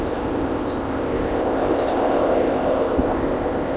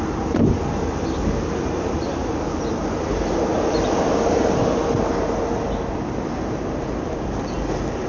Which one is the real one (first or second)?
second